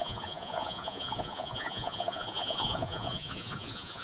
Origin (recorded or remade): remade